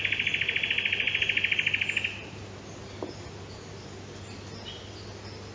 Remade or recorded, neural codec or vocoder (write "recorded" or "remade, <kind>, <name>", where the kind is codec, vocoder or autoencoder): recorded